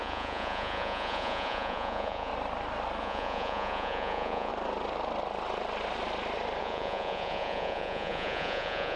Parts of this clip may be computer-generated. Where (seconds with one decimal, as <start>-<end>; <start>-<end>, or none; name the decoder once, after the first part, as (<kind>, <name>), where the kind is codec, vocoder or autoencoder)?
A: 0.0-2.3 (vocoder, Vocos); 3.0-4.5; 6.6-9.0